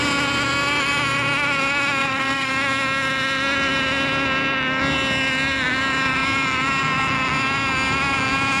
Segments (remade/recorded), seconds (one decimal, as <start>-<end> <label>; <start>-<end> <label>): 0.0-2.0 recorded; 2.0-2.5 remade; 2.5-8.6 recorded